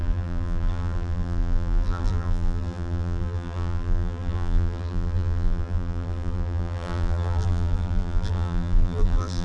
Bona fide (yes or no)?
no